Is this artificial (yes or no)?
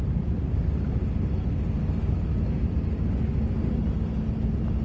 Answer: no